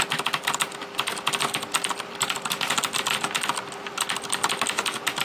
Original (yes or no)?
yes